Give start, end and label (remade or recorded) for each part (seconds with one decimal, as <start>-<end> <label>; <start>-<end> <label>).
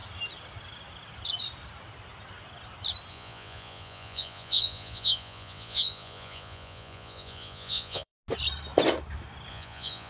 0.0-3.1 recorded; 3.1-8.1 remade; 8.1-9.5 recorded; 9.5-10.1 remade